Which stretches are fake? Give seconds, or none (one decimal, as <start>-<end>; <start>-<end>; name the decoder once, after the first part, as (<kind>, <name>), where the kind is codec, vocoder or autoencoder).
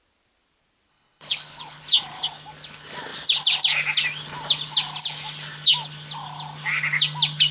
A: 0.9-1.8 (codec, HILCodec)